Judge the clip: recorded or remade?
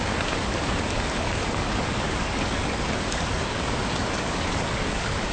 remade